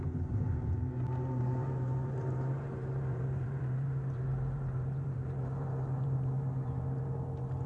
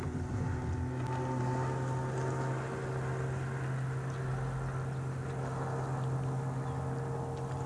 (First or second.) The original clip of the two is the second